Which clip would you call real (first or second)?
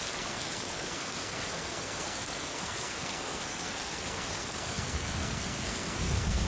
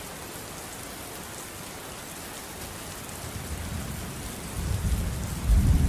second